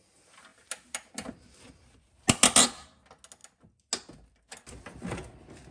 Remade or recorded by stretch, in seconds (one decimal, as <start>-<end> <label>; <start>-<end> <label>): 0.0-5.7 recorded